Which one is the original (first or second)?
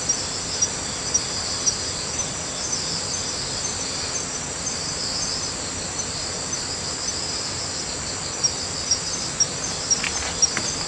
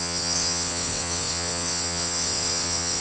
first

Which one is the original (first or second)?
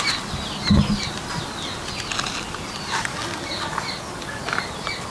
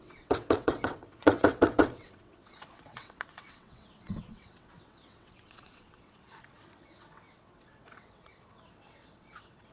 first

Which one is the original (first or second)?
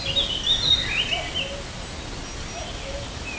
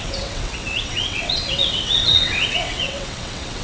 first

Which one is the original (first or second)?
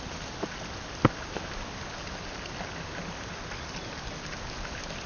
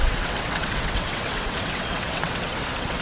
first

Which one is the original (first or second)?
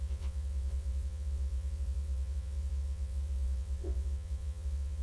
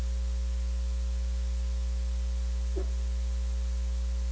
second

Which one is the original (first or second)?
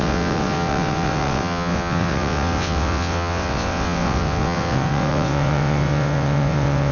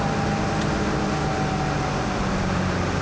second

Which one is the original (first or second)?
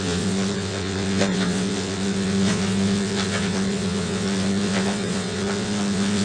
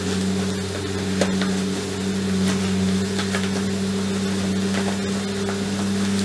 second